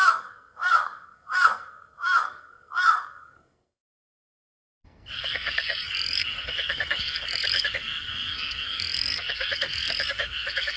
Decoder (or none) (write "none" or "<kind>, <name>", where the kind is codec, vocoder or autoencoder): codec, SNAC